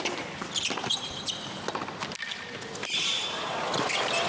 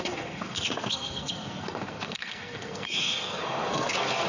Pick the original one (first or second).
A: first